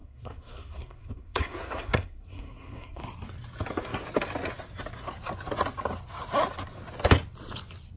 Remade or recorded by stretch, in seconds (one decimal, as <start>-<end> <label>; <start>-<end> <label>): 0.0-3.0 remade; 3.0-8.0 recorded